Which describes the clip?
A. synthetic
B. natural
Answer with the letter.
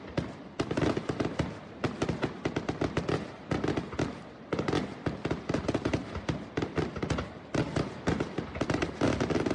B